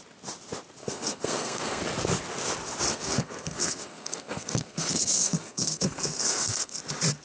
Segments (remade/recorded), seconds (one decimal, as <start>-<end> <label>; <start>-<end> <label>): 0.0-0.8 recorded; 0.8-1.8 remade; 1.8-2.9 recorded; 2.9-6.8 remade; 6.8-7.2 recorded

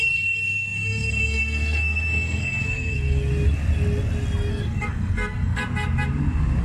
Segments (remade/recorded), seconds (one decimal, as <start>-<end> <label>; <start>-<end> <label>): 0.0-3.3 remade; 3.3-4.5 recorded; 4.5-5.6 remade; 5.6-6.6 recorded

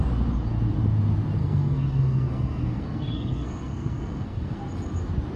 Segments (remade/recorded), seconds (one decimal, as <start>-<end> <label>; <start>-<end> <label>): 0.0-1.4 recorded; 1.4-4.6 remade; 4.6-5.4 recorded

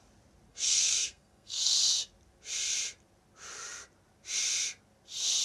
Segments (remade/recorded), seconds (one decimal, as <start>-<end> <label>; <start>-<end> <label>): 0.0-0.5 recorded; 0.5-1.8 remade; 1.8-5.4 recorded

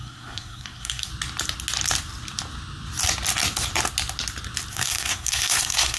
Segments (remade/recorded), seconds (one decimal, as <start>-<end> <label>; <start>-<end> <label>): 0.0-1.1 remade; 1.1-4.7 recorded; 4.7-6.0 remade